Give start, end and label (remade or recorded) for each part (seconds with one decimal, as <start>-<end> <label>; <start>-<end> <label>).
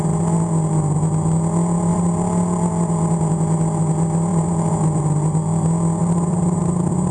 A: 0.0-4.3 recorded; 4.3-5.0 remade; 5.0-6.0 recorded; 6.0-7.1 remade